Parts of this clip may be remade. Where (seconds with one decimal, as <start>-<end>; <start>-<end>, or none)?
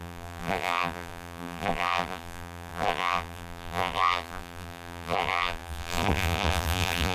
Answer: 0.0-7.1